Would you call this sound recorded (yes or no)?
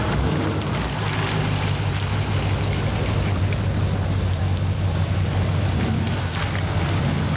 yes